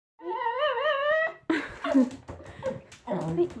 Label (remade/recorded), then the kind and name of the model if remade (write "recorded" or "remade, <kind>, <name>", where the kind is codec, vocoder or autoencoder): recorded